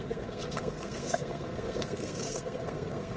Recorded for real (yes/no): no